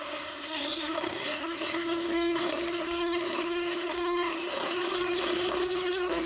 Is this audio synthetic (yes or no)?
yes